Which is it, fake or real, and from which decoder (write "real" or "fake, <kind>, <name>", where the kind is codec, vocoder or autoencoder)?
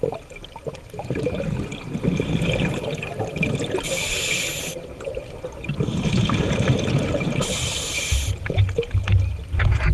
real